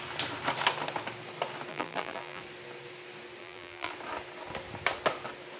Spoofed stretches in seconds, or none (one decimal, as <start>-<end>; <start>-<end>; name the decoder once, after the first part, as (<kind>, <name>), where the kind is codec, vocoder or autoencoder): 1.7-2.4 (vocoder, BigVGAN v2); 3.4-3.9